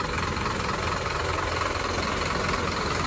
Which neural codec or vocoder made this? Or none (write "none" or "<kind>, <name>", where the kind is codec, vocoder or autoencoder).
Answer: none